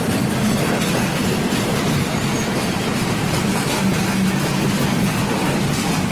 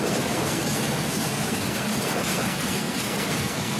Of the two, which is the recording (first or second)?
first